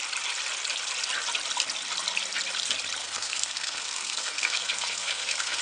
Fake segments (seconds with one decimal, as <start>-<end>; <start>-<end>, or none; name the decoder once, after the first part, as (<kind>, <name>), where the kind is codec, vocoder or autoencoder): 3.0-5.6 (codec, SNAC)